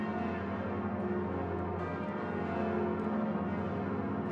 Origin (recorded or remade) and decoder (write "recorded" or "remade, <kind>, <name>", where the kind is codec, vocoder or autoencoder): recorded